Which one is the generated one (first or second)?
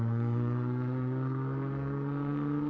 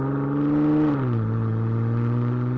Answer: first